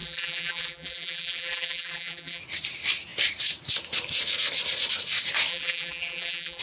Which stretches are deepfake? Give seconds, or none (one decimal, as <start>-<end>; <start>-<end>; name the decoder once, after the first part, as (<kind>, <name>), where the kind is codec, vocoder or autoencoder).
0.0-2.4 (vocoder, BigVGAN v2); 5.5-6.6